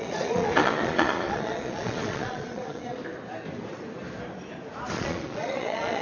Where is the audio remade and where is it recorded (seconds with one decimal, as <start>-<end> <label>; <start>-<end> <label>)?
0.0-3.0 remade; 3.0-4.9 recorded; 4.9-6.0 remade